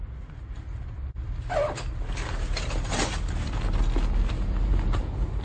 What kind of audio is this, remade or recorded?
recorded